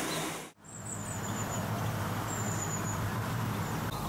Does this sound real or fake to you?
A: real